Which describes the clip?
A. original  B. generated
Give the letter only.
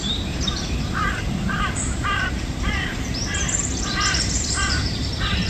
B